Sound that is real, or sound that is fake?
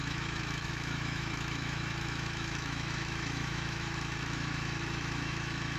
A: fake